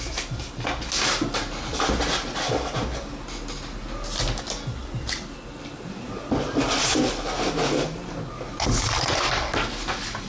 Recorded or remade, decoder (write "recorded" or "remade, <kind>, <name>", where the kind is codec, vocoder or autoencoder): recorded